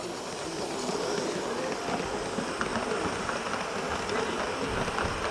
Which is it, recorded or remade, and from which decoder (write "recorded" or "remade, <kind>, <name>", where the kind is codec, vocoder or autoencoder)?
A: recorded